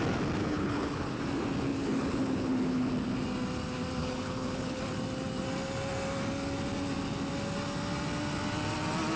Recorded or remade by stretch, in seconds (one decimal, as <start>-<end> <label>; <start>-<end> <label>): 0.0-0.4 recorded; 0.4-1.2 remade; 1.2-1.7 recorded; 1.7-2.9 remade; 2.9-4.0 recorded; 4.0-4.8 remade; 4.8-9.2 recorded